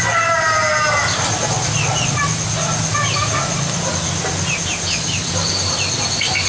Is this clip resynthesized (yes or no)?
no